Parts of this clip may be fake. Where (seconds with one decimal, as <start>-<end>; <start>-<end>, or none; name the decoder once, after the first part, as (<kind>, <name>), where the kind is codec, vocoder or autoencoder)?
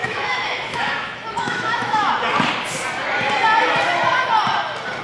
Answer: 0.0-2.1 (autoencoder, DAC-VAE)